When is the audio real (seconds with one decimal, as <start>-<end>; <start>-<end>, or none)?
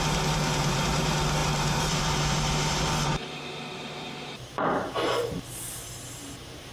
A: none